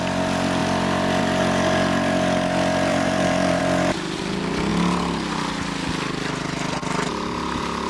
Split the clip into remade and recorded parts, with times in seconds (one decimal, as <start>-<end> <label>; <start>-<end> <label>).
0.0-2.9 recorded; 2.9-3.6 remade; 3.6-7.9 recorded